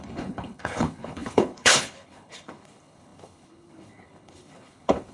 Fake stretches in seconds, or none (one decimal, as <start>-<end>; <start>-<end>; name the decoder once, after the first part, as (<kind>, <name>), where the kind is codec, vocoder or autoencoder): 0.0-5.1 (codec, HILCodec)